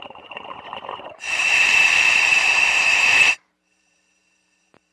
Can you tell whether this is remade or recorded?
remade